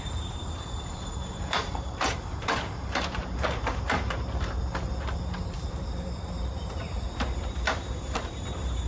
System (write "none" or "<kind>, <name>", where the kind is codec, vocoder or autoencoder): vocoder, BigVGAN v2